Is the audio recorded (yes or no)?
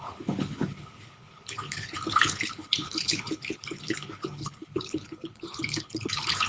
no